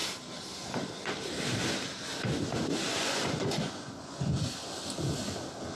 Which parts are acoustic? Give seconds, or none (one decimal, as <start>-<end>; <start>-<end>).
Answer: 0.0-2.9; 4.4-5.8